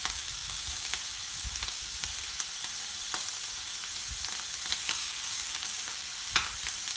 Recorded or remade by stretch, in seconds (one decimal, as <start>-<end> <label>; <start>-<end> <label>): 0.0-2.1 remade; 2.1-4.9 recorded; 4.9-6.1 remade; 6.1-7.0 recorded